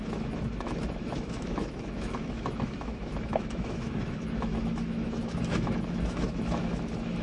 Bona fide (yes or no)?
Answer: no